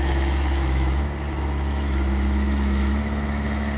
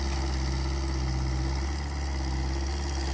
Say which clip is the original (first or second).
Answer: second